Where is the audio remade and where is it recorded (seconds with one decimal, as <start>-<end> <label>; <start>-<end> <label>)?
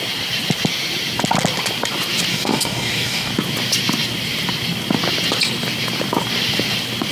0.0-2.3 recorded; 2.3-3.3 remade; 3.3-7.1 recorded